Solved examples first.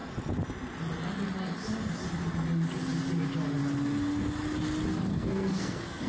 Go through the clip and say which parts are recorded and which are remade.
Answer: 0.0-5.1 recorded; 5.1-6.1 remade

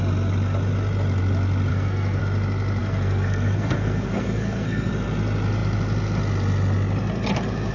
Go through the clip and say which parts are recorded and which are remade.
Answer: 0.0-1.7 recorded; 1.7-2.2 remade; 2.2-2.8 recorded; 2.8-4.9 remade; 4.9-7.7 recorded

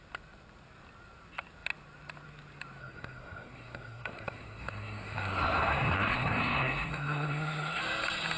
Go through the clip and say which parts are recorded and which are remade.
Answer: 0.0-2.8 recorded; 2.8-7.8 remade; 7.8-8.4 recorded